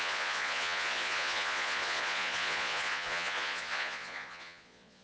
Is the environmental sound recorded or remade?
remade